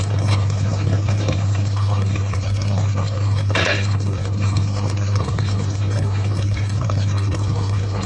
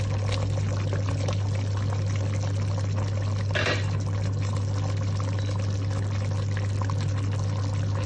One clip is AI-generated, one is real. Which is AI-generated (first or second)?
first